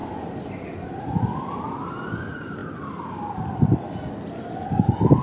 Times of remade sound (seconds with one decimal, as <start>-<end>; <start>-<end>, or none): 2.6-3.5